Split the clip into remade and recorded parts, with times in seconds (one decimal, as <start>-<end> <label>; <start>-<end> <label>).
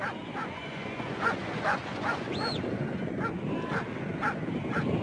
0.0-0.4 recorded; 0.4-3.4 remade; 3.4-5.0 recorded